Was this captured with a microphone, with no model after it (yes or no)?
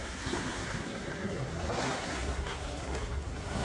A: no